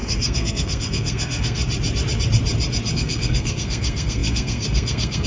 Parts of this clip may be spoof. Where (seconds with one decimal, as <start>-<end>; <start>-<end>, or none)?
0.0-1.6; 2.9-5.3